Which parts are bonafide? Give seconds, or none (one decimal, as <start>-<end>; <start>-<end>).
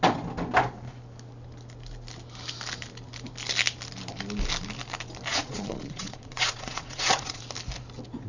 0.0-5.3; 7.4-8.3